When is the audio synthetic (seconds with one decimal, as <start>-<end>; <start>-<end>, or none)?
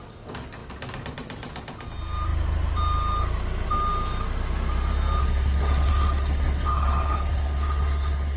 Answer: 5.2-8.4